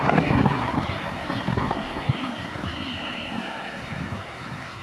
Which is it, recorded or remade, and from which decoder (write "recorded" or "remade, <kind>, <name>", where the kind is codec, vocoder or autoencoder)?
remade, codec, SNAC